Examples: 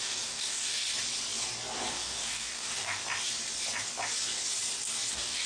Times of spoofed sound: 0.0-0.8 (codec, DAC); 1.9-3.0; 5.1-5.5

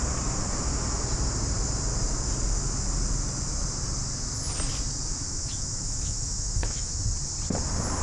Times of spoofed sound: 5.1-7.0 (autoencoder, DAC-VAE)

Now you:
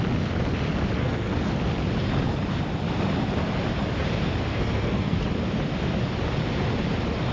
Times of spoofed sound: 1.0-1.5 (codec, SNAC); 4.5-5.2

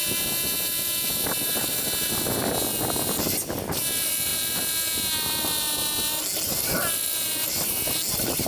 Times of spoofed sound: none

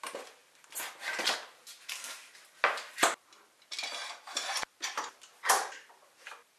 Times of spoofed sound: none

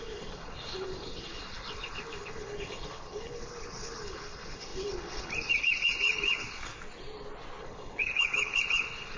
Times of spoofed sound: 0.0-6.7 (codec, HILCodec); 7.6-9.2

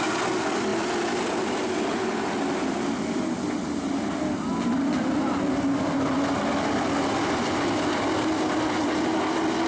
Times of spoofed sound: none